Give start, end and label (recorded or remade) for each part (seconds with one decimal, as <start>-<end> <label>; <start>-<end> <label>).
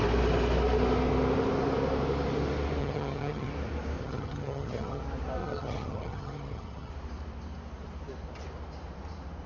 0.0-2.8 recorded; 2.8-3.5 remade; 3.5-4.0 recorded; 4.0-5.0 remade; 5.0-5.4 recorded; 5.4-6.9 remade; 6.9-9.5 recorded